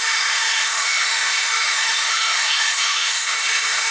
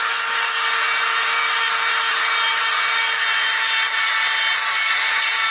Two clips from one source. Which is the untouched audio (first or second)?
second